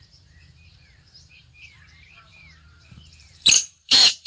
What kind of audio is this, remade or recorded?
remade